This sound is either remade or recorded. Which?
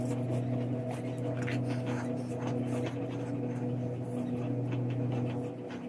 recorded